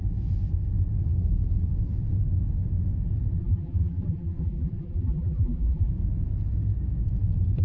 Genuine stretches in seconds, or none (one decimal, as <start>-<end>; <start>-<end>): 0.0-3.4; 5.9-7.6